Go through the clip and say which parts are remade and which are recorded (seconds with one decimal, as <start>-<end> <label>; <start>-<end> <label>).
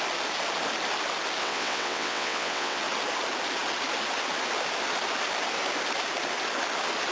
0.0-1.4 recorded; 1.4-2.8 remade; 2.8-7.1 recorded